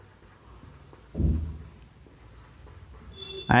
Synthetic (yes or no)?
no